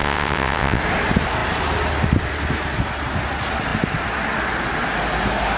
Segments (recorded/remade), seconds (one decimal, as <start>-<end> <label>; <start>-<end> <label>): 0.0-0.8 remade; 0.8-5.6 recorded

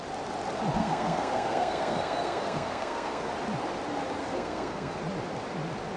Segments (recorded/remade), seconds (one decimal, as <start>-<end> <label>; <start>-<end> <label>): 0.0-0.8 recorded; 0.8-3.3 remade; 3.3-4.2 recorded; 4.2-5.0 remade; 5.0-6.0 recorded

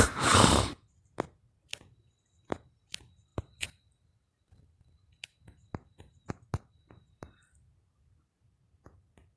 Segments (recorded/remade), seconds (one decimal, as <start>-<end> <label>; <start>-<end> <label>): 0.0-9.4 recorded

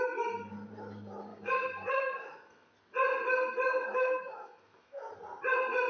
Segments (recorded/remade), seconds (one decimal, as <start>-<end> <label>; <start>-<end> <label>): 0.0-1.3 recorded; 1.3-2.7 remade; 2.7-3.9 recorded; 3.9-5.1 remade; 5.1-5.9 recorded

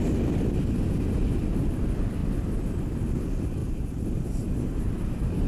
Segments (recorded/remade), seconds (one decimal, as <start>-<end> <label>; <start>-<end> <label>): 0.0-3.6 recorded; 3.6-5.5 remade

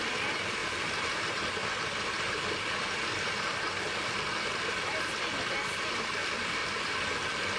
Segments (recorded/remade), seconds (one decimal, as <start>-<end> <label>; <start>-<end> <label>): 0.0-7.6 remade

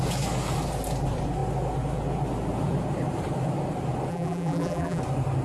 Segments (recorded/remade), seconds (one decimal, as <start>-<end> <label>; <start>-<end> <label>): 0.0-4.1 recorded; 4.1-5.0 remade; 5.0-5.4 recorded